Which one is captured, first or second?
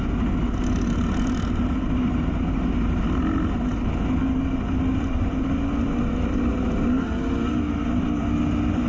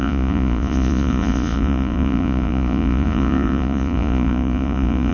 first